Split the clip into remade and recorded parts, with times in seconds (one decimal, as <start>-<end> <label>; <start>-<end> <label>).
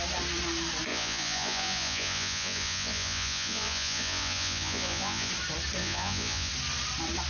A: 0.0-0.9 recorded; 0.9-5.3 remade; 5.3-5.8 recorded; 5.8-6.5 remade; 6.5-7.3 recorded